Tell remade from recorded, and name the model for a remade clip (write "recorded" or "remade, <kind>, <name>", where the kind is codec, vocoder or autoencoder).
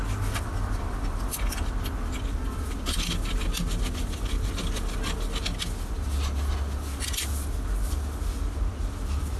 recorded